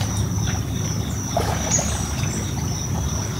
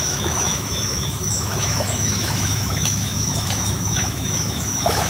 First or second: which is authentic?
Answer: first